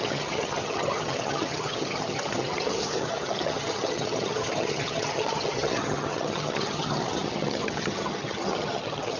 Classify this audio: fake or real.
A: fake